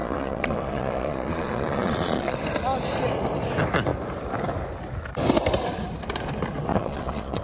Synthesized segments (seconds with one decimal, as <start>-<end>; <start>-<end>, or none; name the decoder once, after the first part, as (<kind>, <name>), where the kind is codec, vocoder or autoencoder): 0.0-2.4 (vocoder, Vocos); 6.7-7.4